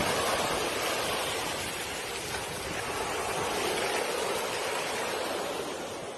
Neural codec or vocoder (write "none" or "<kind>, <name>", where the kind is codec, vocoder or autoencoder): none